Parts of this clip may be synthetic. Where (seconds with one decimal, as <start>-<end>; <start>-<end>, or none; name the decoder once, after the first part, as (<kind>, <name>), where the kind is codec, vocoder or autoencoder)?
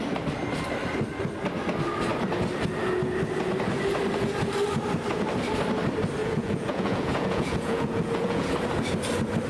6.2-8.5 (vocoder, Vocos)